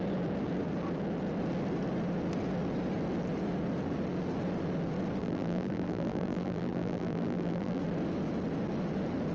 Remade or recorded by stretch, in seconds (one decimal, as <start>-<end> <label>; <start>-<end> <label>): 0.0-5.2 recorded; 5.2-7.8 remade; 7.8-9.3 recorded